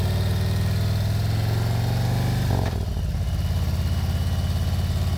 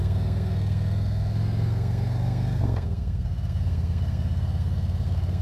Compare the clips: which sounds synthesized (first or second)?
second